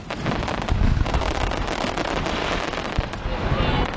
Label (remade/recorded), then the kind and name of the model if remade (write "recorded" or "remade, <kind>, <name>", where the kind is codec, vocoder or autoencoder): recorded